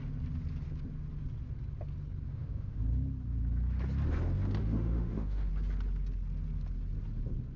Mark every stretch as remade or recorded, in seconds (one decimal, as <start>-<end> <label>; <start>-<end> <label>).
0.0-2.3 recorded; 2.3-2.8 remade; 2.8-4.6 recorded; 4.6-5.5 remade; 5.5-7.6 recorded